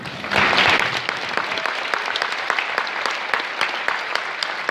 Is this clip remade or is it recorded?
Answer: recorded